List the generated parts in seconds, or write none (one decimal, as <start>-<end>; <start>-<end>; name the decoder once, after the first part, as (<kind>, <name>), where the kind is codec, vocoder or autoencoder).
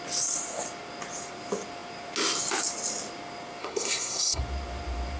3.6-4.4 (codec, SNAC)